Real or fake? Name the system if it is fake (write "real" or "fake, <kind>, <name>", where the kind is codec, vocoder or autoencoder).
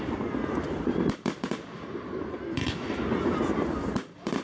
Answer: fake, vocoder, BigVGAN v2